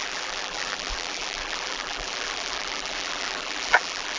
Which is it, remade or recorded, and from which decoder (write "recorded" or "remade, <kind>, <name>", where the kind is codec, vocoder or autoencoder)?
remade, vocoder, BigVGAN v2